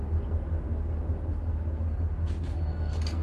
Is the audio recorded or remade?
remade